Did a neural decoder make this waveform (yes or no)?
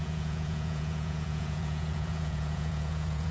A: yes